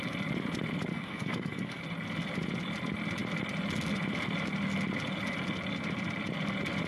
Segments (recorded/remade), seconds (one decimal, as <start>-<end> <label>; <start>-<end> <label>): 0.0-0.9 recorded; 0.9-1.8 remade; 1.8-6.9 recorded